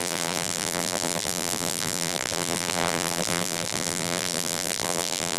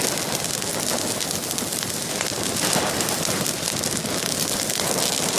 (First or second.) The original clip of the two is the second